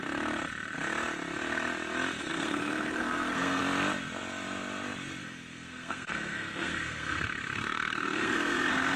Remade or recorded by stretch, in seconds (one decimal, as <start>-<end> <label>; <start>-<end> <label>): 0.0-2.3 recorded; 2.3-3.6 remade; 3.6-5.2 recorded; 5.2-9.0 remade